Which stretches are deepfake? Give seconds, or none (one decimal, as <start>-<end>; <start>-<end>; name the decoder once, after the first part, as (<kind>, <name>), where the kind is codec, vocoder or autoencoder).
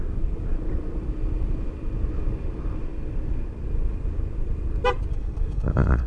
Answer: 5.1-6.1 (codec, DAC)